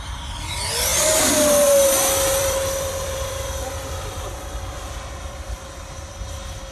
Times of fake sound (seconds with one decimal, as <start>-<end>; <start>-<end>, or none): 0.9-4.8